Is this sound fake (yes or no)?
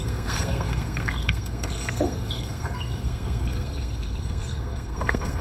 yes